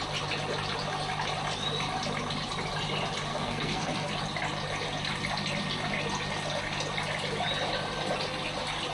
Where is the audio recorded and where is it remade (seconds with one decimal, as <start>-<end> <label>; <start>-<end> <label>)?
0.0-3.3 recorded; 3.3-4.1 remade; 4.1-8.9 recorded